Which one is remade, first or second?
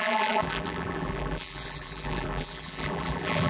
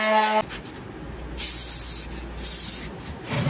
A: first